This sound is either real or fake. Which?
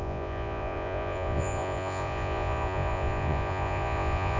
fake